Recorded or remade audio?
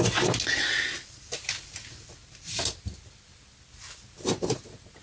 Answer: recorded